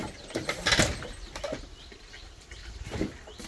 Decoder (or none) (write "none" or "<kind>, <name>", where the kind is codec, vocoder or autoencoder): none